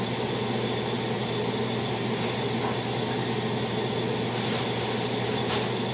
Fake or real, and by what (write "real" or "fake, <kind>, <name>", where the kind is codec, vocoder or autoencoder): real